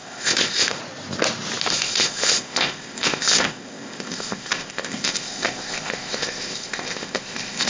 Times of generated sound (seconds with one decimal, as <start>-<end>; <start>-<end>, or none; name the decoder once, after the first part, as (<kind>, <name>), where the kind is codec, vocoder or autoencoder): 0.0-0.8 (codec, ZipCodec); 1.7-7.7